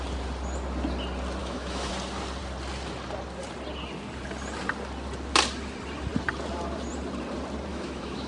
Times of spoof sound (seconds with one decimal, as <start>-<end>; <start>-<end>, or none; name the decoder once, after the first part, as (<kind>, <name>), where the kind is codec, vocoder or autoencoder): 1.4-1.9 (autoencoder, DAC-VAE); 7.7-8.3